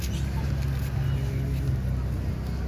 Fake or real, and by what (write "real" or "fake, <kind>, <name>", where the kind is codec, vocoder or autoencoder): real